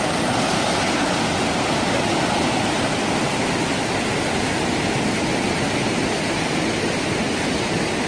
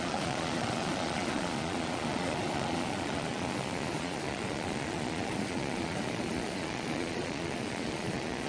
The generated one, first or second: second